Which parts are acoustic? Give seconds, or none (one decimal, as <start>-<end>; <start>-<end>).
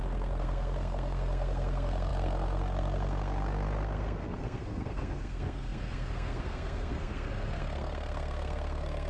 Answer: none